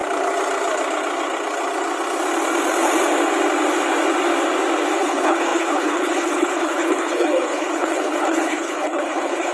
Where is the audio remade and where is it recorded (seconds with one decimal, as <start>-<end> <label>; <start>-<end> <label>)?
0.0-5.0 recorded; 5.0-9.5 remade